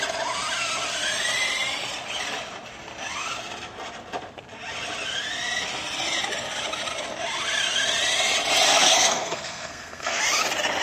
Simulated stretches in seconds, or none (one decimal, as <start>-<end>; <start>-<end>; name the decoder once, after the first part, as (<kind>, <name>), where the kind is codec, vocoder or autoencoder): 8.7-10.2 (codec, SNAC)